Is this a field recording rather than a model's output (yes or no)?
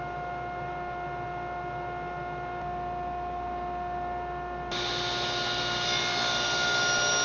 yes